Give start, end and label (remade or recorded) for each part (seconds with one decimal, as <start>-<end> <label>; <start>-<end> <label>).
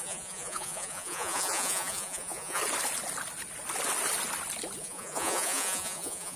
0.0-2.6 remade; 2.6-4.8 recorded; 4.8-6.4 remade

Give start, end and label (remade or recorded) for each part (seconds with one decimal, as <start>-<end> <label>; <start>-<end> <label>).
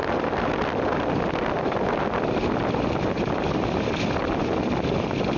0.0-5.4 recorded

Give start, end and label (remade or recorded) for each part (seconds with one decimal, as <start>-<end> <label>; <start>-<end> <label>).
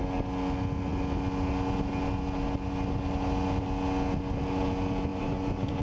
0.0-5.1 recorded; 5.1-5.8 remade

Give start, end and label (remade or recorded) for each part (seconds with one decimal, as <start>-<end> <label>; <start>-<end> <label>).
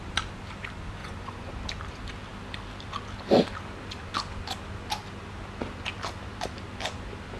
0.0-1.0 recorded; 1.0-1.5 remade; 1.5-7.4 recorded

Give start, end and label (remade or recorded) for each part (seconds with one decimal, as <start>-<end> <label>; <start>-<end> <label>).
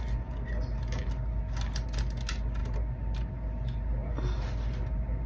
0.0-5.3 recorded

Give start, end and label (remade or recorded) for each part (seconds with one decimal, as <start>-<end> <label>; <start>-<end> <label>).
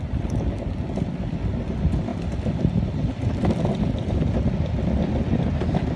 0.0-6.0 recorded